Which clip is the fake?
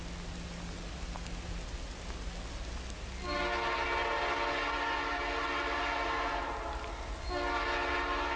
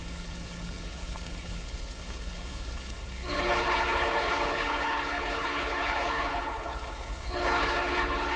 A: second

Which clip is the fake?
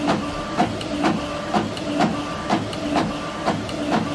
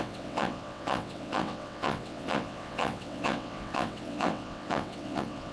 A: second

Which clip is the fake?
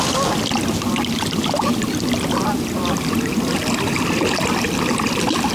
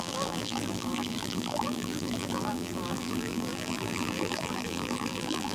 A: second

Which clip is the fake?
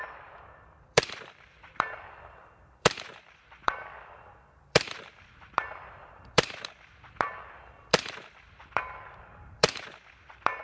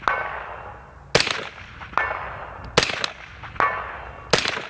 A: first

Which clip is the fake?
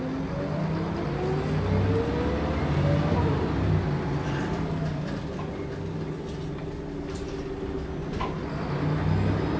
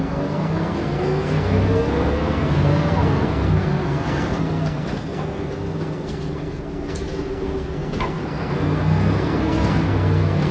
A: second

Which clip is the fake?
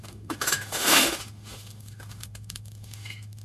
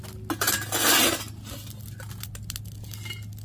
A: first